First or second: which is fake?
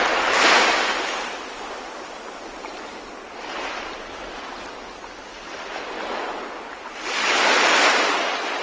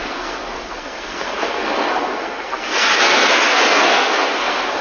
second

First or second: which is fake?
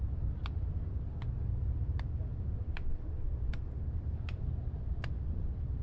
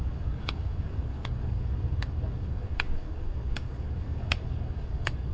second